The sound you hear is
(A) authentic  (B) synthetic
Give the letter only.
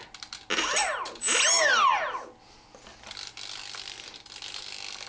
A